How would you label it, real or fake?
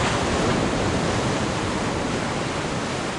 fake